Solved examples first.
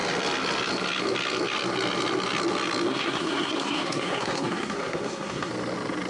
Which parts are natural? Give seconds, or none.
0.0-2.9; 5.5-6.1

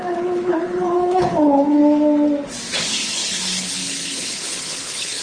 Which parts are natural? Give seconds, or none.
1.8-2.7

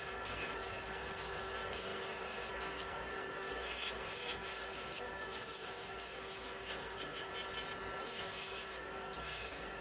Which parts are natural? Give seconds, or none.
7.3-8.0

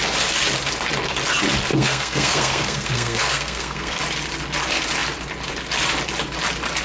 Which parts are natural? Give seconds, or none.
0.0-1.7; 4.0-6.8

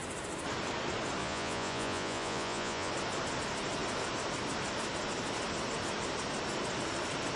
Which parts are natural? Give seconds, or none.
0.0-1.2; 2.9-7.4

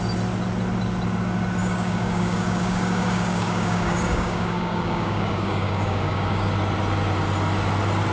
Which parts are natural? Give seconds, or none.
0.0-1.6; 6.5-8.1

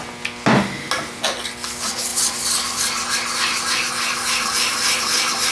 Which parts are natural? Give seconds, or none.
0.0-5.5

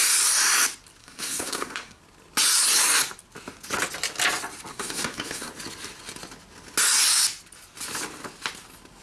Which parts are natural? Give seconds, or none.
0.0-1.0; 2.0-4.7; 5.5-9.0